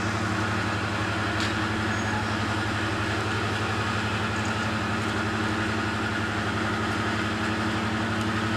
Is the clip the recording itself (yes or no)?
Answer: yes